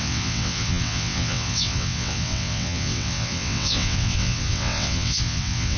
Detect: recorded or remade remade